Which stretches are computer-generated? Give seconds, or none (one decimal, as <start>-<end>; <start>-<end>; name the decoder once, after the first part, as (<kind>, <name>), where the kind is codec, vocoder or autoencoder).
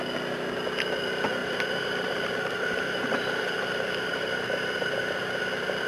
1.4-4.8 (vocoder, BigVGAN v2)